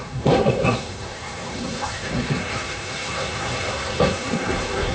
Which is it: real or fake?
fake